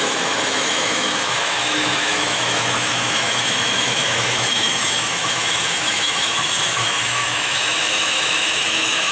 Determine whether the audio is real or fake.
fake